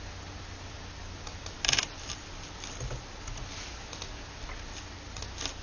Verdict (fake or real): real